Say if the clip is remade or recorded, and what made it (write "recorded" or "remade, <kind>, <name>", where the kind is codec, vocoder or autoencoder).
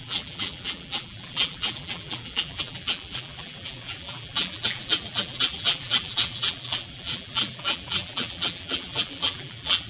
remade, vocoder, BigVGAN v2